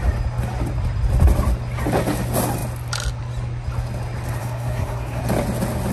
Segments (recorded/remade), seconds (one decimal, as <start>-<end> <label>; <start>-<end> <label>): 0.0-4.4 recorded; 4.4-5.2 remade; 5.2-5.9 recorded